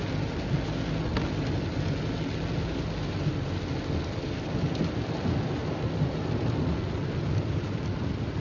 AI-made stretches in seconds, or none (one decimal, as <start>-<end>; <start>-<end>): none